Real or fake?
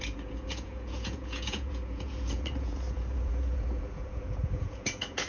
fake